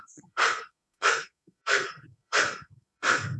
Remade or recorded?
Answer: remade